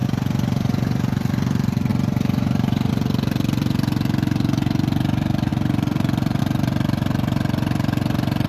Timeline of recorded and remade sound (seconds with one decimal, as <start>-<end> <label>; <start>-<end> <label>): 0.0-5.5 recorded; 5.5-6.4 remade; 6.4-8.5 recorded

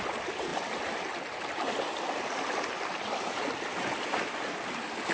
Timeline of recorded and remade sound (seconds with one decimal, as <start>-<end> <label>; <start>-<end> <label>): 0.0-5.1 recorded